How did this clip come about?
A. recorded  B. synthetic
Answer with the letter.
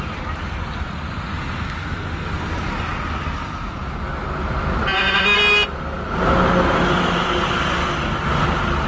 A